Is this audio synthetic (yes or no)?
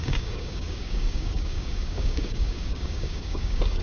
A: yes